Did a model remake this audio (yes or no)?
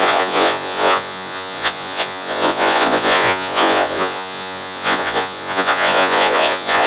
yes